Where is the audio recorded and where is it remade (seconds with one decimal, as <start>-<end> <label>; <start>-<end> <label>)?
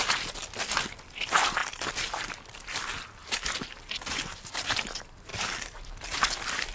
0.0-1.6 recorded; 1.6-2.4 remade; 2.4-3.2 recorded; 3.2-4.4 remade; 4.4-5.3 recorded; 5.3-5.8 remade; 5.8-6.7 recorded